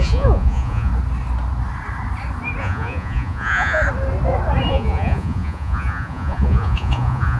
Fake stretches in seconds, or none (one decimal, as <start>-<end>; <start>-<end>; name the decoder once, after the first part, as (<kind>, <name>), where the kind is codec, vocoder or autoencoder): 0.0-0.9 (vocoder, Vocos); 2.6-3.8; 4.7-7.4